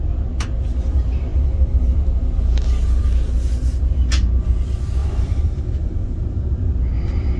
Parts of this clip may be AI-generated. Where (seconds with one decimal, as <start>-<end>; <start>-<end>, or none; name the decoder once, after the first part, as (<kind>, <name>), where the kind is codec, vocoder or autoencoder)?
5.0-5.6 (vocoder, BigVGAN v2)